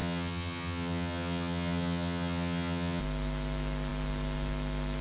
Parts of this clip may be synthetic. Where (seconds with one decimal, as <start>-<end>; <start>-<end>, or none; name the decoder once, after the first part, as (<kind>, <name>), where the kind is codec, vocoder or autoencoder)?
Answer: 0.0-3.0 (vocoder, HiFi-GAN)